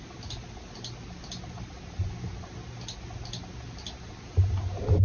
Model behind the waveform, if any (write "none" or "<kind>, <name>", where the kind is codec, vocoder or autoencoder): none